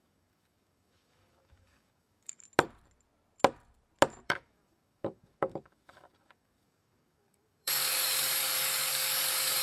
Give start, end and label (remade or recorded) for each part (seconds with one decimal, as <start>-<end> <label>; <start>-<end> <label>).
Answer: 0.0-2.4 remade; 2.4-4.2 recorded; 4.2-9.6 remade